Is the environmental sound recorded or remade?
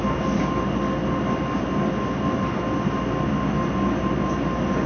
recorded